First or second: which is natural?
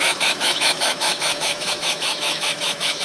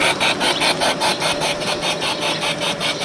second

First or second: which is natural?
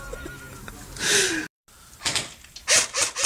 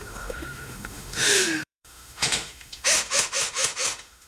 first